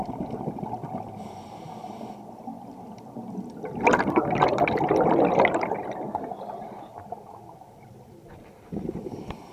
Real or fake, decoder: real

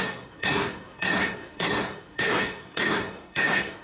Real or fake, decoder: fake, codec, SNAC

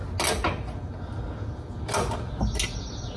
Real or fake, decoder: real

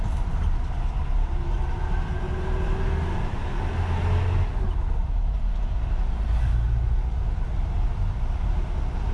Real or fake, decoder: real